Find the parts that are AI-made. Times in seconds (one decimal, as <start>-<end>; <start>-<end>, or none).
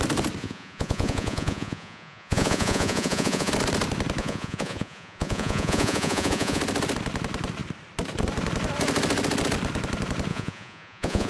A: 0.4-3.5; 4.2-6.6; 10.3-11.3